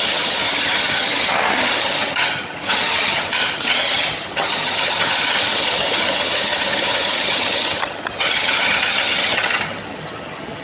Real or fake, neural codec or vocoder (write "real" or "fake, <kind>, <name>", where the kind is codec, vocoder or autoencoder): fake, vocoder, HiFi-GAN